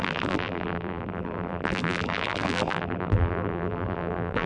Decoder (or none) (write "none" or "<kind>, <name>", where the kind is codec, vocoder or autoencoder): vocoder, BigVGAN v2